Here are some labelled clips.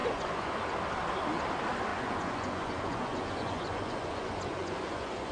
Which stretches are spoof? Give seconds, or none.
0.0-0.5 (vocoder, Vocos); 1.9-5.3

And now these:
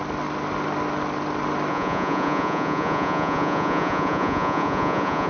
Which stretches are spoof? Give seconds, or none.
1.7-5.3 (vocoder, Vocos)

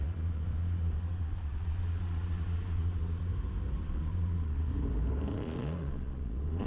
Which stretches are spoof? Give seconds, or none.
0.0-3.3 (vocoder, Vocos); 3.8-4.7; 5.3-6.7

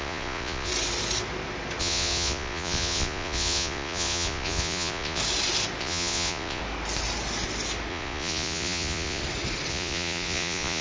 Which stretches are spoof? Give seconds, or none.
0.0-0.7 (vocoder, Vocos); 1.8-5.2; 5.8-6.6; 7.9-9.2; 9.7-10.8

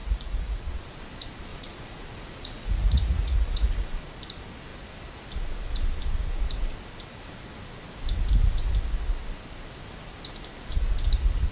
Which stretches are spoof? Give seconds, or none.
0.0-0.8 (vocoder, Vocos); 1.5-4.0

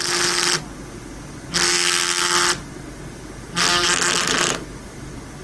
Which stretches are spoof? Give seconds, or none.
none

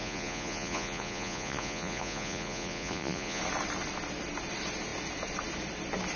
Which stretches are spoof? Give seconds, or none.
0.0-3.4 (vocoder, Vocos)

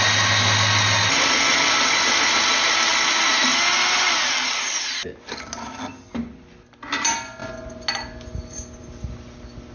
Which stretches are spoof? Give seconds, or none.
none